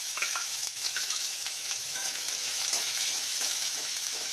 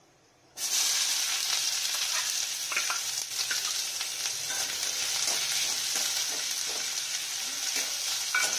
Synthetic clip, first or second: first